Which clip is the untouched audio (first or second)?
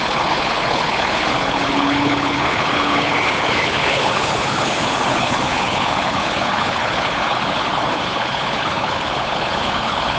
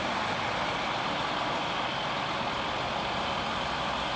second